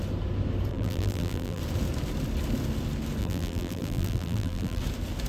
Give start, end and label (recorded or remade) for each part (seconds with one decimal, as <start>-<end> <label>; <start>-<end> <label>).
0.0-0.7 recorded; 0.7-1.6 remade; 1.6-3.2 recorded; 3.2-4.8 remade; 4.8-5.3 recorded